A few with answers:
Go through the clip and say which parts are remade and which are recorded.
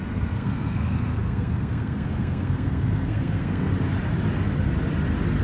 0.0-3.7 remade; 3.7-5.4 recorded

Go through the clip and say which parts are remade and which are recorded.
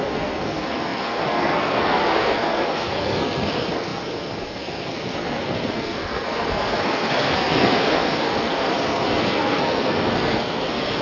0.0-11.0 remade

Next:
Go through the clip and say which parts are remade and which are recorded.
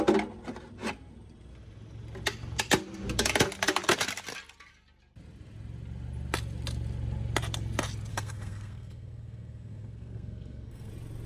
0.0-8.1 recorded; 8.1-10.9 remade; 10.9-11.3 recorded